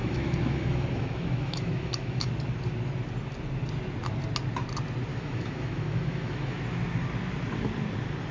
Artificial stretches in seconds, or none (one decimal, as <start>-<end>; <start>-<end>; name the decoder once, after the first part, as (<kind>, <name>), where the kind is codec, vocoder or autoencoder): 0.0-2.3 (autoencoder, DAC-VAE); 5.1-6.6